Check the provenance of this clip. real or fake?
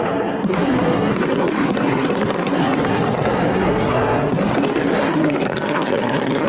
fake